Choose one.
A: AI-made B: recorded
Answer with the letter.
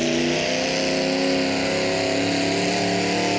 B